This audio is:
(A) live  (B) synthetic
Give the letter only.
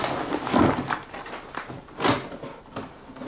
A